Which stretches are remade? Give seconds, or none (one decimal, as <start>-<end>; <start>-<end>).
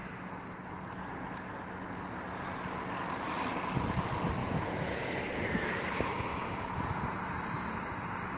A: 4.4-5.1; 6.3-7.2